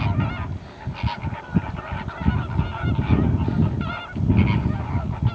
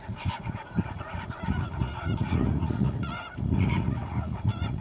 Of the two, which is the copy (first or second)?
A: second